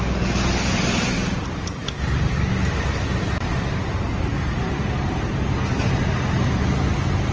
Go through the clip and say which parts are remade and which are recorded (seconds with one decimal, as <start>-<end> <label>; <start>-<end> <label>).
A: 0.0-7.3 recorded